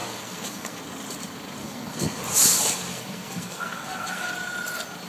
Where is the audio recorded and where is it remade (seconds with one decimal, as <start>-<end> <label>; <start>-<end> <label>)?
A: 0.0-0.8 remade; 0.8-1.6 recorded; 1.6-2.2 remade; 2.2-2.9 recorded; 2.9-4.3 remade; 4.3-5.1 recorded